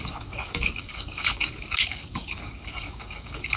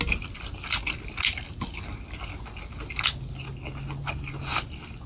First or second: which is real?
second